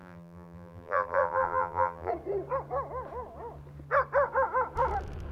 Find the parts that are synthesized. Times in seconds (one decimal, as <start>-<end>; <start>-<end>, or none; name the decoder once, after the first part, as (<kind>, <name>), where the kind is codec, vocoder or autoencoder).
0.0-2.1 (vocoder, BigVGAN v2)